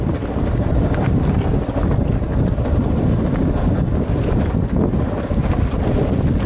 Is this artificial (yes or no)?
no